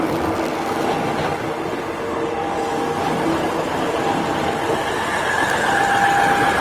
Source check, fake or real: real